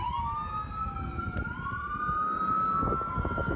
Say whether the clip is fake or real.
real